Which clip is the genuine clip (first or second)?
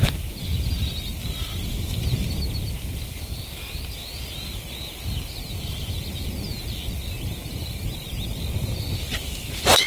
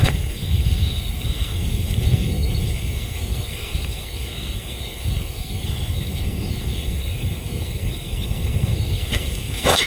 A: first